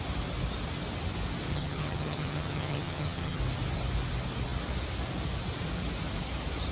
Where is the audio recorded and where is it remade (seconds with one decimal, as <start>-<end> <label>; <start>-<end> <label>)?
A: 0.0-1.5 recorded; 1.5-3.4 remade; 3.4-6.7 recorded